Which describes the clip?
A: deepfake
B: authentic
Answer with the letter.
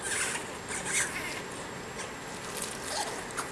B